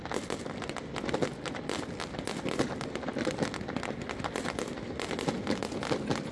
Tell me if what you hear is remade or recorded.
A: recorded